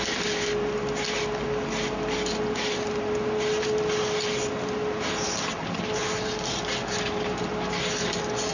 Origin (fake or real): real